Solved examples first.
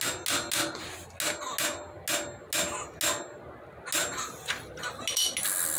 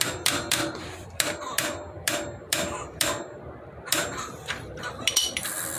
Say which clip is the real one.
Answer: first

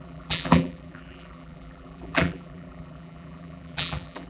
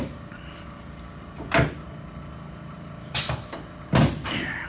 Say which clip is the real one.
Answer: second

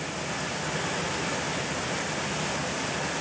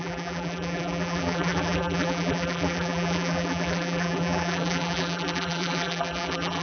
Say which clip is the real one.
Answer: first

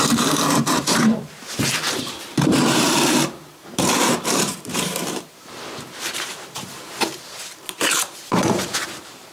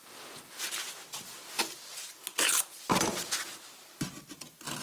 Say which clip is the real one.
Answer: second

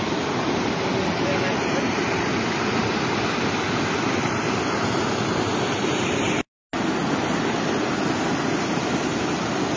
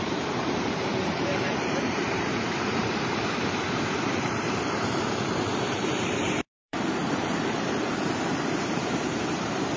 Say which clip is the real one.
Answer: first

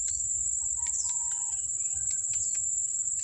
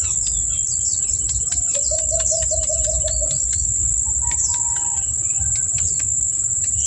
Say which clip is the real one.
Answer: second